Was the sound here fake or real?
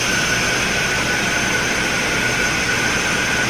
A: real